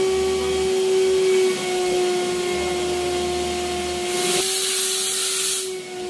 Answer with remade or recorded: recorded